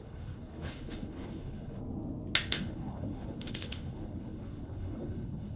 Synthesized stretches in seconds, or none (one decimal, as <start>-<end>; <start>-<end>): 0.0-1.8; 2.5-5.6